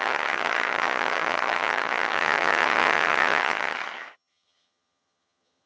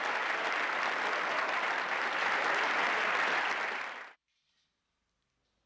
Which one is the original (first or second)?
second